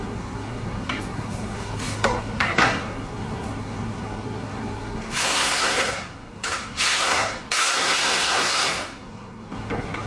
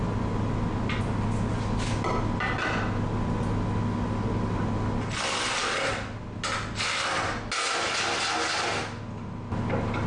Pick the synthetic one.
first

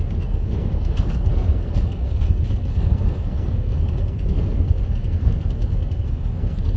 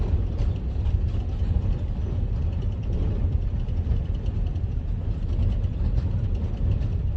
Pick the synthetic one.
first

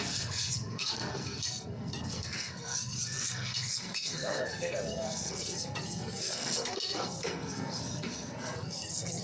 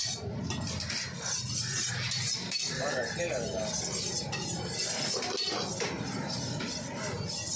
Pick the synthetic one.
first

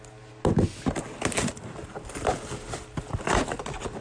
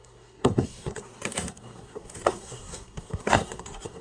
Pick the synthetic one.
second